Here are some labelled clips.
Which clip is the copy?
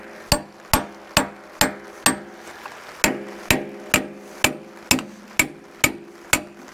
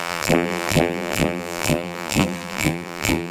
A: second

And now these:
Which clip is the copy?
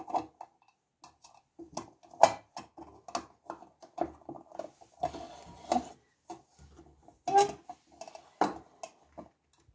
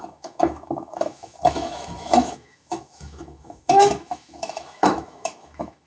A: second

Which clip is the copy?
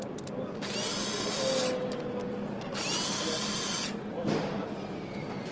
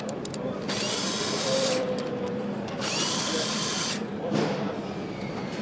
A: second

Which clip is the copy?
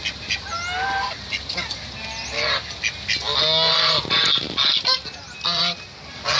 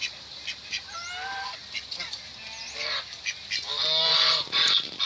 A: second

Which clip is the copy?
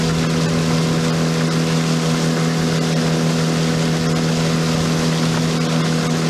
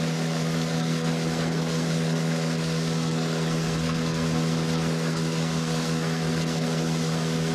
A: second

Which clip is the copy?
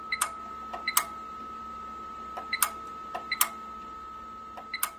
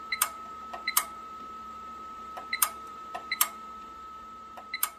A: second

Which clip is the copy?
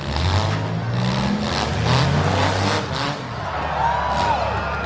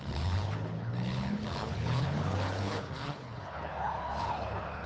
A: second